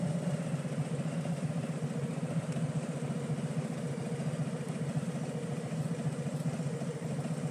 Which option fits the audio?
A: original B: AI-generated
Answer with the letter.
A